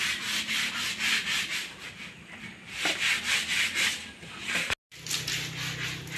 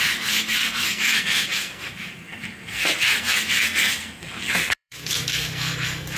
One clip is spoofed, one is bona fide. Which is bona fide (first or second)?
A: first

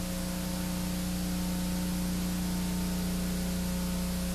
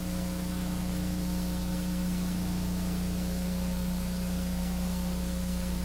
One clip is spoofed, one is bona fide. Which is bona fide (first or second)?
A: first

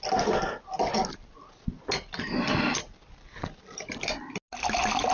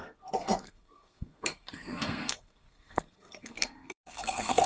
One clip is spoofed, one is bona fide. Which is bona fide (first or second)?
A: first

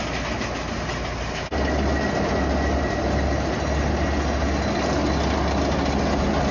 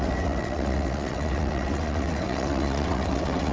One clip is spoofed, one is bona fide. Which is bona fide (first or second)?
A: first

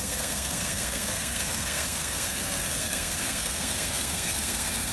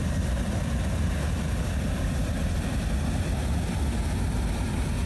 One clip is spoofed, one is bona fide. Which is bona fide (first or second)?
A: second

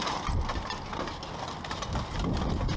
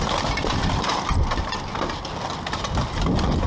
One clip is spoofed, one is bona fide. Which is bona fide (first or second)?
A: first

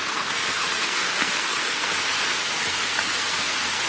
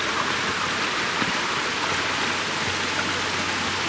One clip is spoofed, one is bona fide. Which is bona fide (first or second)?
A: second